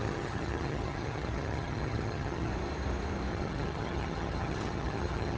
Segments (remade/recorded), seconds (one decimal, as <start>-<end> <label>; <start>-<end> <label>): 0.0-2.5 remade; 2.5-3.3 recorded; 3.3-5.4 remade